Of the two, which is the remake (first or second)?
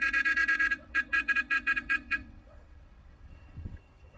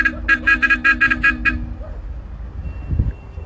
first